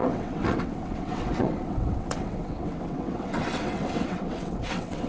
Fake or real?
fake